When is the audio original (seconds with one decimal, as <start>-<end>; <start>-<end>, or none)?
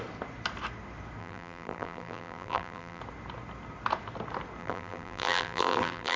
0.0-1.2; 3.0-4.6